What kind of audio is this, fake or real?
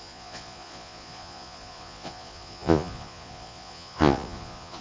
fake